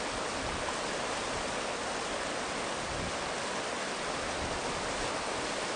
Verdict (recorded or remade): recorded